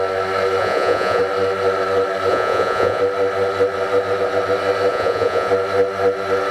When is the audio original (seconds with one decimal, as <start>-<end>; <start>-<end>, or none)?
0.0-0.6; 1.2-2.3; 3.0-4.9; 5.5-6.5